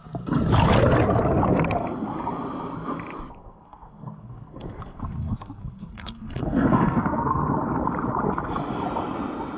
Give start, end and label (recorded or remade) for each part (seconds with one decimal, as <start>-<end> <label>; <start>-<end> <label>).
0.0-3.4 recorded; 3.4-7.4 remade; 7.4-9.6 recorded